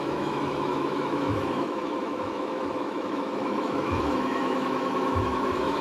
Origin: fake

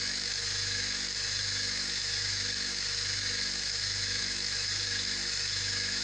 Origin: fake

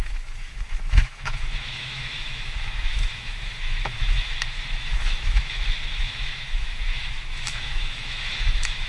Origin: fake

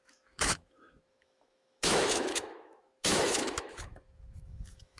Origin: fake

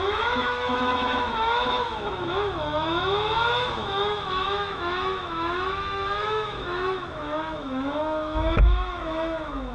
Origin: fake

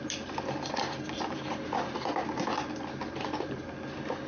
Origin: real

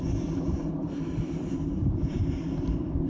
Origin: real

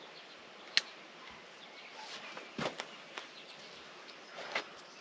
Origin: real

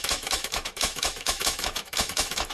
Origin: fake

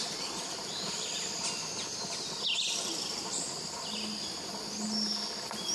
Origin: real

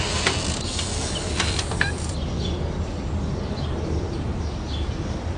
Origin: real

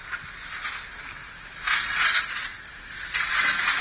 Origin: real